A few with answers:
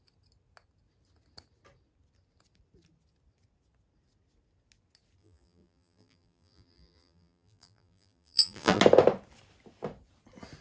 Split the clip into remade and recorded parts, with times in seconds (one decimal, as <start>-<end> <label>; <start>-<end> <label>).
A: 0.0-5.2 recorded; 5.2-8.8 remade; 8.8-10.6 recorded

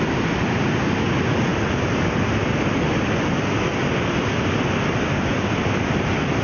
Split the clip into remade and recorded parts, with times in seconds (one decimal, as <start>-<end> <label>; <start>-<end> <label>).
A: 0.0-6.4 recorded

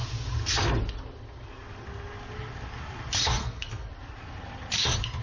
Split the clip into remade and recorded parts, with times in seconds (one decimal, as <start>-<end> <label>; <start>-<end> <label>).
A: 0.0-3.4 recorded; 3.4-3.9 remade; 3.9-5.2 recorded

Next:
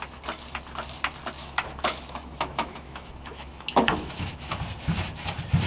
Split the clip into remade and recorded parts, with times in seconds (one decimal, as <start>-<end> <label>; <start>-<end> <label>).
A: 0.0-1.4 recorded; 1.4-4.5 remade; 4.5-5.7 recorded